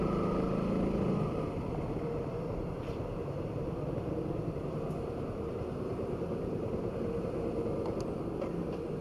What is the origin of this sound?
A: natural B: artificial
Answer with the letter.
A